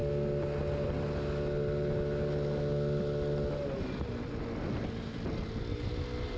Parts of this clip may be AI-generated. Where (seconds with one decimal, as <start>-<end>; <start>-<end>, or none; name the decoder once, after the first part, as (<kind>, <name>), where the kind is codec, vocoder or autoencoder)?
none